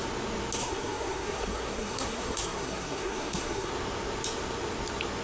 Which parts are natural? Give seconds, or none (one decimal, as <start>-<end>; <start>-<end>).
0.0-0.6; 3.7-5.2